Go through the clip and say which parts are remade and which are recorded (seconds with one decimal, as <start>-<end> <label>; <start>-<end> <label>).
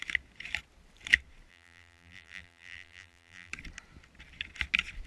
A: 0.0-1.5 recorded; 1.5-3.5 remade; 3.5-5.1 recorded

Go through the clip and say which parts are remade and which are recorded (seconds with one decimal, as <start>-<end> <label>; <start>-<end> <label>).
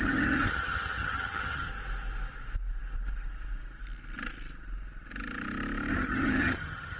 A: 0.0-1.7 remade; 1.7-5.9 recorded; 5.9-7.0 remade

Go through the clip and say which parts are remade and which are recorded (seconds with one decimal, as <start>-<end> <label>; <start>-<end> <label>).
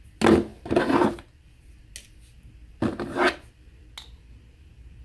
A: 0.0-5.0 recorded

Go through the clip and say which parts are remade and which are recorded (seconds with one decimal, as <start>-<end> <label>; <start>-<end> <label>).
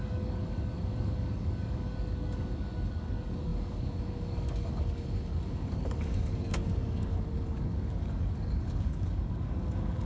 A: 0.0-10.1 remade